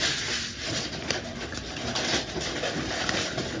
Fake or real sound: fake